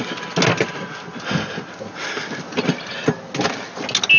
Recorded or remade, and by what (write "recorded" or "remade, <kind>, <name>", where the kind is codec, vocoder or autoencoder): recorded